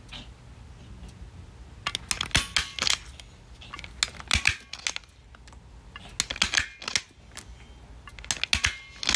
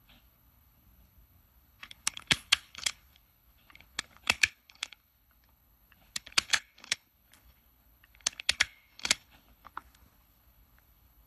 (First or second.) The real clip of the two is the first